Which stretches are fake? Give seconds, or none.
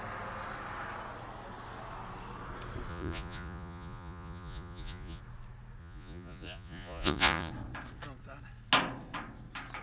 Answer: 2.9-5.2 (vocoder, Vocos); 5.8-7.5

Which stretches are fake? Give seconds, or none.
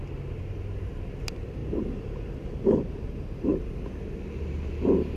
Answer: none